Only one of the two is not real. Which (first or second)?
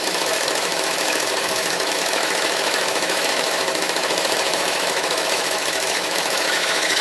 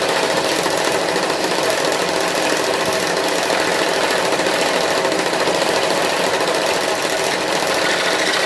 first